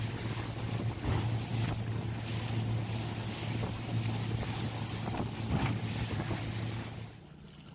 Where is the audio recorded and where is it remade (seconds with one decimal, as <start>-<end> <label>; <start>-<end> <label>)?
0.0-7.7 recorded